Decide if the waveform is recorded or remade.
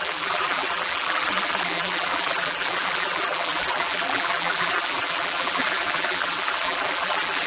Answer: remade